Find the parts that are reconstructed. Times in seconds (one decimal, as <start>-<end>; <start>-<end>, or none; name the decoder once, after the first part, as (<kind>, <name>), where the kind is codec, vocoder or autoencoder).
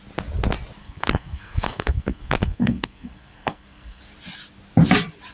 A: 0.8-4.0 (codec, SNAC)